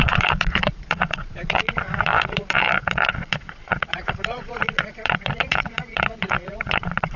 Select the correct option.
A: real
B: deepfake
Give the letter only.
B